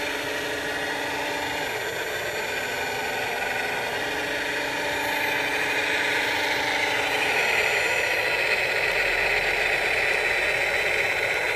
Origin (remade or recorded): recorded